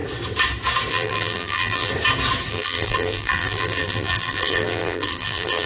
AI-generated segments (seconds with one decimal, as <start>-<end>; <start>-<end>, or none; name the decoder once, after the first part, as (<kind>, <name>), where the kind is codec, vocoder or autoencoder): 0.9-1.9 (vocoder, BigVGAN v2); 2.5-5.7